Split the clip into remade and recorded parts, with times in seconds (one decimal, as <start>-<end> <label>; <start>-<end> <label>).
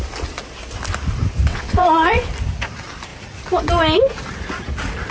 0.0-1.5 recorded; 1.5-2.3 remade; 2.3-5.1 recorded